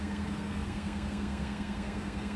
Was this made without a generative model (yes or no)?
no